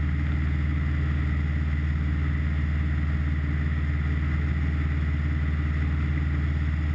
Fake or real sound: real